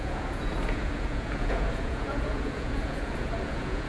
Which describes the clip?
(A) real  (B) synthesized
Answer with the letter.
B